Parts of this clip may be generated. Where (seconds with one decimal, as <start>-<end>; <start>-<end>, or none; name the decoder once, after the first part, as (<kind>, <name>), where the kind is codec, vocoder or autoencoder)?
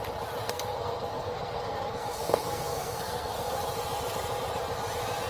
0.4-3.6 (codec, SNAC)